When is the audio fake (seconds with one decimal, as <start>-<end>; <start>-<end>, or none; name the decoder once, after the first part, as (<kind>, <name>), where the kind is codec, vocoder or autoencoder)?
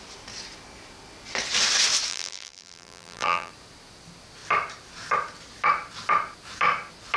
2.1-3.5 (vocoder, BigVGAN v2)